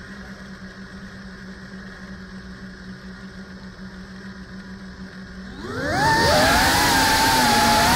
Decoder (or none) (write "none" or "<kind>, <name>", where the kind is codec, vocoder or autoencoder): none